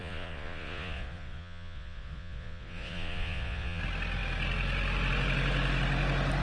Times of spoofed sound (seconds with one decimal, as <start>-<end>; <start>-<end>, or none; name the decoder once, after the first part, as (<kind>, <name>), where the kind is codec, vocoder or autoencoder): 0.0-3.8 (vocoder, Vocos)